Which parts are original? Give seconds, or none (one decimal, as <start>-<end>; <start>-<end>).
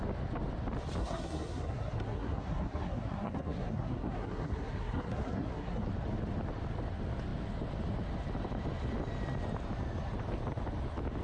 0.0-1.0; 5.9-11.2